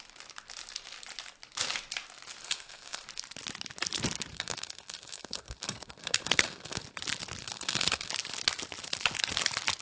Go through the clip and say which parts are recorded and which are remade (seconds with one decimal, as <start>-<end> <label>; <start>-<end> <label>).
0.0-2.4 recorded; 2.4-3.0 remade; 3.0-4.3 recorded; 4.3-6.8 remade; 6.8-7.4 recorded; 7.4-8.1 remade; 8.1-9.8 recorded